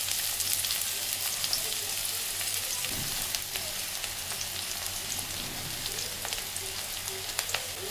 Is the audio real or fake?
real